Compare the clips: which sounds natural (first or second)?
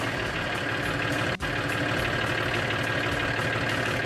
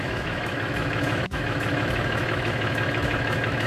first